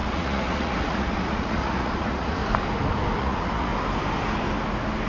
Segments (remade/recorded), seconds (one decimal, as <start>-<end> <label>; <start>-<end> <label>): 0.0-2.4 remade; 2.4-3.2 recorded; 3.2-3.7 remade; 3.7-5.1 recorded